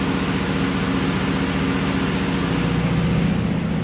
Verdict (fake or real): real